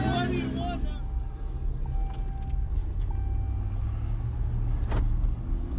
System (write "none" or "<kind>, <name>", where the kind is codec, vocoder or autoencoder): none